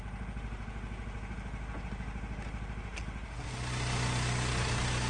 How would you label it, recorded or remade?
recorded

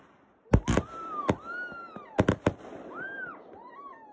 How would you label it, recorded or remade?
recorded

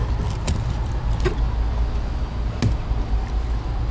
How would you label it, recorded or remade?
recorded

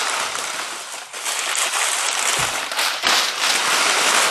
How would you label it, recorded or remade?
recorded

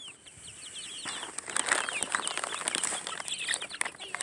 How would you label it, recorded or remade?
recorded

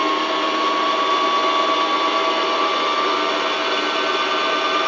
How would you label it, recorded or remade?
recorded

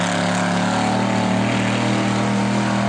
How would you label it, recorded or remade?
recorded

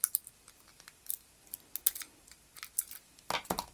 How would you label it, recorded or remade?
recorded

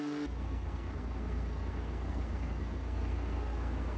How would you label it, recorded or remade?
remade